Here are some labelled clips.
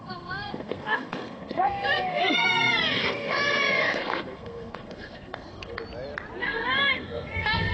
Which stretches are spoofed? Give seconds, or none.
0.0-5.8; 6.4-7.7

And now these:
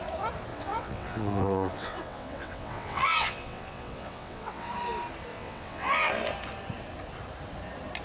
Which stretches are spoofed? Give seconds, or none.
0.5-4.7; 5.3-6.1

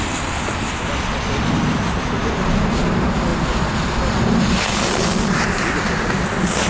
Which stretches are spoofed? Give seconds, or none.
none